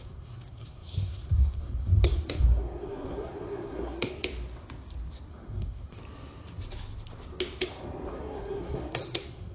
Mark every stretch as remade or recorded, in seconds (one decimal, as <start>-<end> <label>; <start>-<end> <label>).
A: 0.0-4.1 remade; 4.1-5.3 recorded; 5.3-6.0 remade; 6.0-8.1 recorded; 8.1-9.5 remade